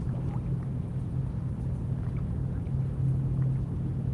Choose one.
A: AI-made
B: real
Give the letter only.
B